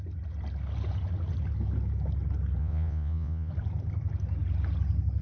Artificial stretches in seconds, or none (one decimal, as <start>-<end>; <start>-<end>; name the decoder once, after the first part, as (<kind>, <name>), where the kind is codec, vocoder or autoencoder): 2.6-3.5 (vocoder, Vocos)